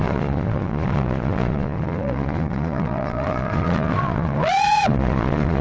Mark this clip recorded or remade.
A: remade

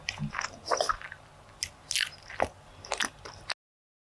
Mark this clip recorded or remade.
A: recorded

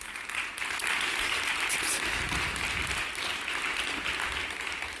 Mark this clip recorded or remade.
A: recorded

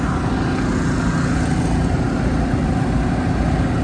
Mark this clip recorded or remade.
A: recorded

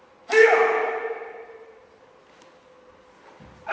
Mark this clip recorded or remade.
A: recorded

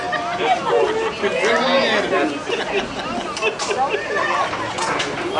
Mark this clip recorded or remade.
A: recorded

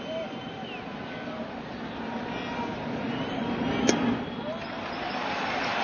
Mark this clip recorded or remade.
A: recorded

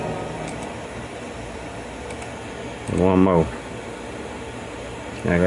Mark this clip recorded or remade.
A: recorded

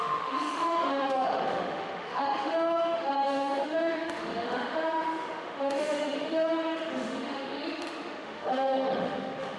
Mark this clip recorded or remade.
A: remade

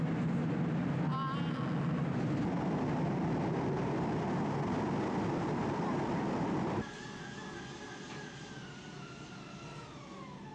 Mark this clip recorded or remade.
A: recorded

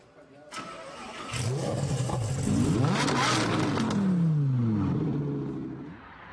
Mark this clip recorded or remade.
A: recorded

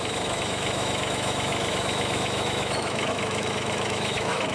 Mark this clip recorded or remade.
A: remade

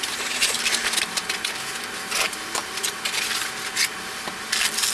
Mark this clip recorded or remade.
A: recorded